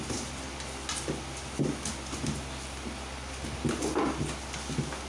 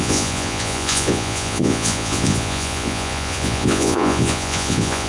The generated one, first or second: second